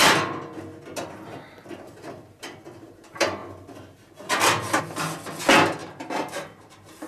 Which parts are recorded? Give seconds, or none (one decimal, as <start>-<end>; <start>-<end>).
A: 0.0-5.8